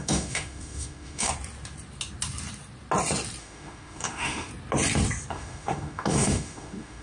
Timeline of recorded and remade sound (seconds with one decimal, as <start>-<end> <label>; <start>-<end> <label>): 0.0-1.3 remade; 1.3-3.4 recorded; 3.4-4.5 remade; 4.5-5.3 recorded; 5.3-7.0 remade